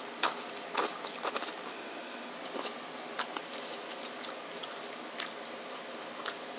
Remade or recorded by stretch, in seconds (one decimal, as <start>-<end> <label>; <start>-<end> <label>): 0.0-1.7 recorded; 1.7-2.3 remade; 2.3-6.6 recorded

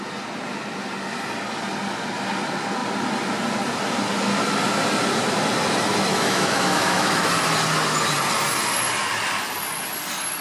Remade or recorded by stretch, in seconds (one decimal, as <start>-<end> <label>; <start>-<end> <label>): 0.0-6.1 recorded; 6.1-7.3 remade; 7.3-10.4 recorded

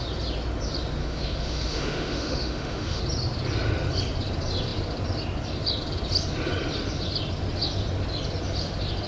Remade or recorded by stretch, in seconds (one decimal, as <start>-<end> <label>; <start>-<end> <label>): 0.0-1.0 recorded; 1.0-3.0 remade; 3.0-9.1 recorded

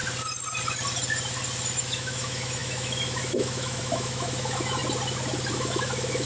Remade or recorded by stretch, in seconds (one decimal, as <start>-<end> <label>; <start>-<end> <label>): 0.0-1.8 recorded; 1.8-4.8 remade; 4.8-5.5 recorded; 5.5-6.3 remade